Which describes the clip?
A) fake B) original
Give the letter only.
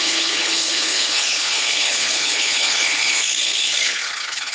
A